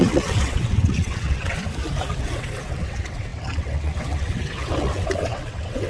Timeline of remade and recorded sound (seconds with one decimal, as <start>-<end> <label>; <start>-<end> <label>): 0.0-1.6 remade; 1.6-2.1 recorded; 2.1-5.9 remade